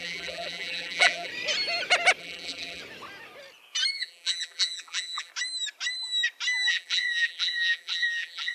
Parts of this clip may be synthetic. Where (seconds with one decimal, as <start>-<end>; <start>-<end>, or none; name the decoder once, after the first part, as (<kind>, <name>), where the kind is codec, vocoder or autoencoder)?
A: 0.0-1.3 (vocoder, BigVGAN v2); 2.2-2.8; 3.9-5.3; 6.7-8.5